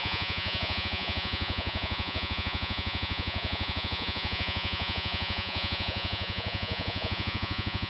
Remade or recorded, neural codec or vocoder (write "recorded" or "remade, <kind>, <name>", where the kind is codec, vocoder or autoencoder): remade, vocoder, Vocos